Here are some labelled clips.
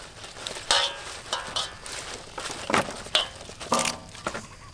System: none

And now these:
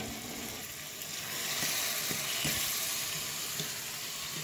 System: none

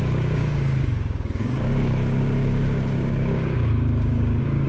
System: codec, DAC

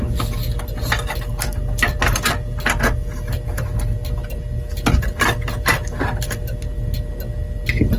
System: none